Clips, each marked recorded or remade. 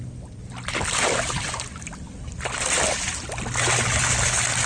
recorded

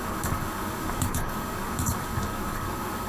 remade